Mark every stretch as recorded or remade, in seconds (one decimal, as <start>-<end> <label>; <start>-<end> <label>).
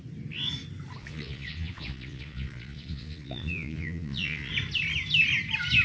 0.0-1.0 recorded; 1.0-4.5 remade; 4.5-5.8 recorded